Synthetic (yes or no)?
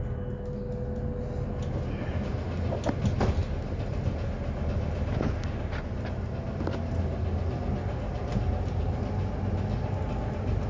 no